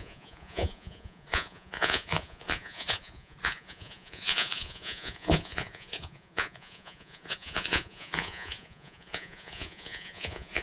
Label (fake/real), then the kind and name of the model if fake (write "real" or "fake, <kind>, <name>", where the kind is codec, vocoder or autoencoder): fake, vocoder, Vocos